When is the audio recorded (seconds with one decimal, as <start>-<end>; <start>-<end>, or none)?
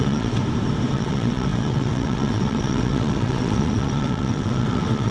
0.4-0.9